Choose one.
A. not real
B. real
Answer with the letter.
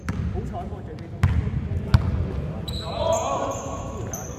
B